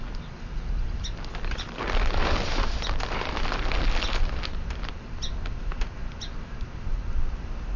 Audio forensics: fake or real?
real